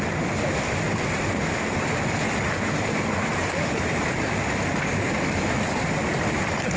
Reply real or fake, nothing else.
real